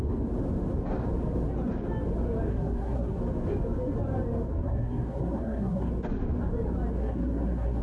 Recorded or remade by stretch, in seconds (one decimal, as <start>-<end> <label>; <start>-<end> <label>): 0.0-2.5 recorded; 2.5-3.2 remade; 3.2-4.5 recorded; 4.5-5.9 remade; 5.9-7.0 recorded; 7.0-7.8 remade